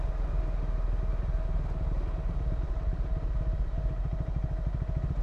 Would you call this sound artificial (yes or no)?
no